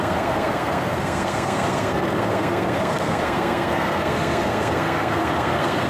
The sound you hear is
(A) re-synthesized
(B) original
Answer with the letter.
A